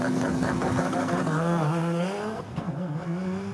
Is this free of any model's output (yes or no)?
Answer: no